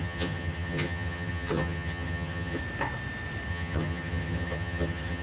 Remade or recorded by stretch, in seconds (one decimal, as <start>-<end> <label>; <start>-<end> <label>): 0.0-2.6 remade; 2.6-3.5 recorded; 3.5-5.2 remade

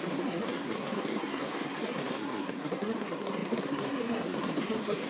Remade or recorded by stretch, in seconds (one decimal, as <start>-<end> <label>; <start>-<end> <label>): 0.0-5.1 remade

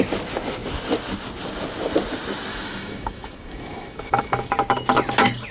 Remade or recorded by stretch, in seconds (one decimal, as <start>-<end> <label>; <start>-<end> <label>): 0.0-2.5 recorded; 2.5-4.5 remade; 4.5-5.5 recorded

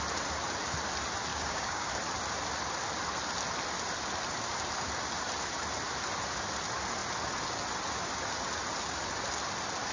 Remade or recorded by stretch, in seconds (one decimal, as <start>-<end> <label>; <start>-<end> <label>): 0.0-1.3 recorded; 1.3-1.9 remade; 1.9-9.9 recorded

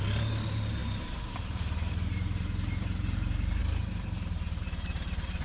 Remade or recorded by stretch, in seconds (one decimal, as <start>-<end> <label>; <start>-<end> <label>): 0.0-3.6 remade; 3.6-4.6 recorded; 4.6-5.4 remade

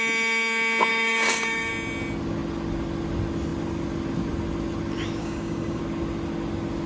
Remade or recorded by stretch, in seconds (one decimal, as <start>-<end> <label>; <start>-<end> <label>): 0.0-0.9 recorded; 0.9-1.7 remade; 1.7-5.2 recorded; 5.2-5.8 remade; 5.8-6.9 recorded

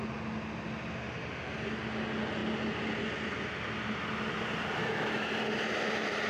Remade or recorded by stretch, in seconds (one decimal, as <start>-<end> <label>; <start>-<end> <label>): 0.0-4.8 recorded; 4.8-5.3 remade; 5.3-6.3 recorded

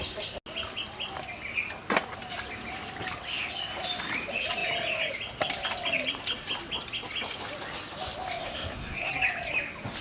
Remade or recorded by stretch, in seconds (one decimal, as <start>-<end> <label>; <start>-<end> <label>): 0.0-8.4 recorded; 8.4-9.1 remade; 9.1-10.0 recorded